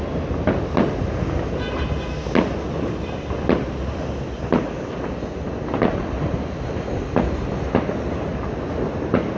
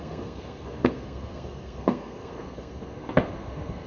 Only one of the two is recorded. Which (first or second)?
first